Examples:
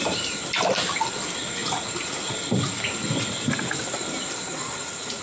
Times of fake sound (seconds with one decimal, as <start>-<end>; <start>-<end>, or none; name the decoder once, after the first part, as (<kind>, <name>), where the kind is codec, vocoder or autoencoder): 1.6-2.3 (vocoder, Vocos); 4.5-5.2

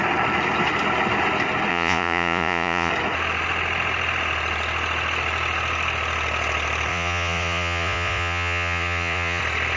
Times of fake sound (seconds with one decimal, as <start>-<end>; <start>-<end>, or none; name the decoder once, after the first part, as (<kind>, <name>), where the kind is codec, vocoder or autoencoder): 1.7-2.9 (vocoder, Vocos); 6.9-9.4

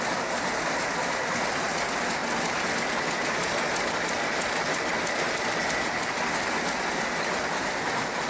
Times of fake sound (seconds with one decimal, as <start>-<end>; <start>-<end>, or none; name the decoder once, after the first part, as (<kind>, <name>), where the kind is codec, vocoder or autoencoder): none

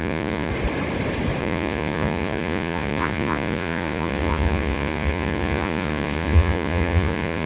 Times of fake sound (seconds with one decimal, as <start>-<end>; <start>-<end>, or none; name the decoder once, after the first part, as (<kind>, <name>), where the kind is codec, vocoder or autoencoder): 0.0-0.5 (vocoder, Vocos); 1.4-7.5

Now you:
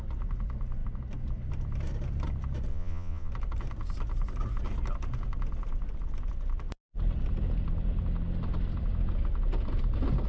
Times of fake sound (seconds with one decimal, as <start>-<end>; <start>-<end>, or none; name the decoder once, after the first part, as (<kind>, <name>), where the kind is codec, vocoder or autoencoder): 2.7-3.3 (vocoder, Vocos)